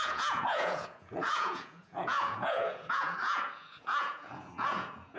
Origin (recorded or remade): remade